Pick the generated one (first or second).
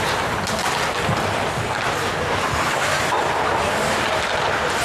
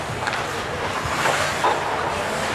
first